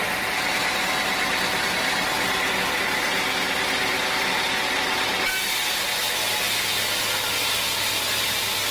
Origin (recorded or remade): recorded